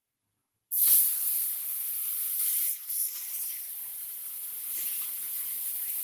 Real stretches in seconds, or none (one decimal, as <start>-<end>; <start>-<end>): 0.0-0.4; 1.0-1.7; 4.6-6.0